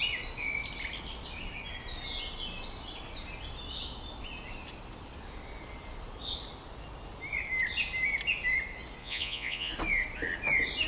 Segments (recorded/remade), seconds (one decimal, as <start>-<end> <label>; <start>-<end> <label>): 0.0-9.0 recorded; 9.0-9.7 remade; 9.7-10.9 recorded